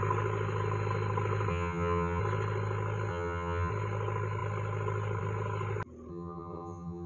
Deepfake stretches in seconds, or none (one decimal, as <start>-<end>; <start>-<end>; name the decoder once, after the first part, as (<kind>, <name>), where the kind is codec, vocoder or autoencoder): 1.5-2.2 (vocoder, HiFi-GAN); 3.1-3.7; 6.1-7.1